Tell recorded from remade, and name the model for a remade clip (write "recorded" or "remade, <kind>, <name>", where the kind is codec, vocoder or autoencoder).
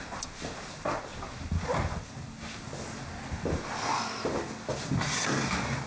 recorded